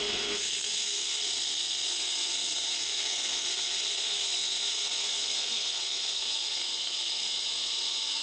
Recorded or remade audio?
remade